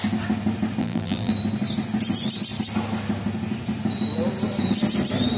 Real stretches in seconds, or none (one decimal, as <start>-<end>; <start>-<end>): 0.0-0.8; 1.3-5.4